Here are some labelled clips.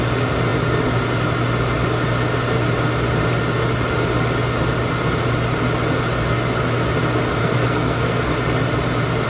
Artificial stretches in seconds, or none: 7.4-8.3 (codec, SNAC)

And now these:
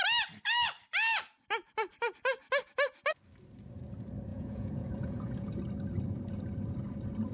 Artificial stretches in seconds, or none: 4.3-5.6 (vocoder, Vocos)

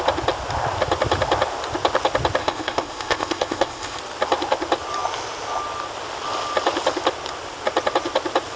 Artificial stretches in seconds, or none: 2.4-4.0 (codec, ZipCodec)

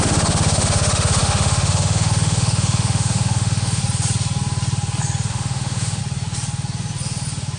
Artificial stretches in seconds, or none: 0.0-3.8 (autoencoder, DAC-VAE); 5.3-6.0

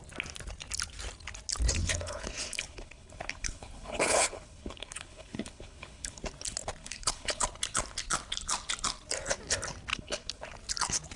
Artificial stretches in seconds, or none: 1.8-6.2 (codec, HILCodec); 6.8-7.4; 9.9-10.5

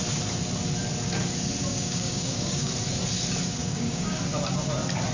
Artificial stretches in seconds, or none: 1.7-2.7 (codec, DAC); 3.6-4.1

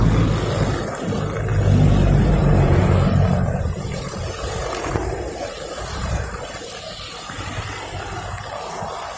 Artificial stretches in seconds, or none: 1.5-6.7 (vocoder, BigVGAN v2)